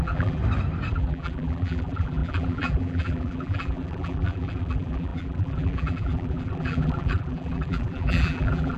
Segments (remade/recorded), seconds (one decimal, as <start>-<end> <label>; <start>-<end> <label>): 0.0-0.4 remade; 0.4-0.9 recorded; 0.9-8.8 remade